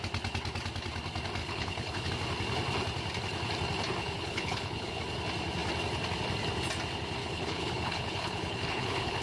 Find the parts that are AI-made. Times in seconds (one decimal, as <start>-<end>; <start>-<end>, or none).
1.4-2.1; 4.0-5.0; 7.2-9.2